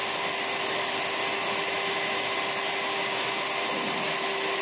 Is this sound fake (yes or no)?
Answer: no